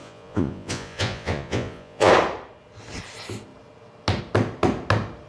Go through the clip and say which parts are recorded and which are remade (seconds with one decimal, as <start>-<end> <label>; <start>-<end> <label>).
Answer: 0.0-2.1 remade; 2.1-5.3 recorded